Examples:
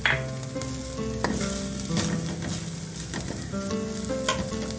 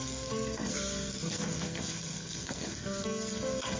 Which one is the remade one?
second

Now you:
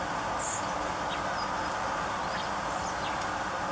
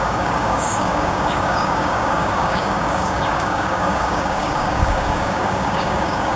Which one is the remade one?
second